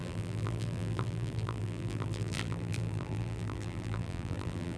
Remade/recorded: remade